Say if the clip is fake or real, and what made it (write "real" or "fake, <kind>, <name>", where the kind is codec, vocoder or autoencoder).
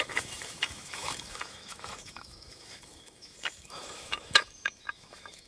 fake, autoencoder, DAC-VAE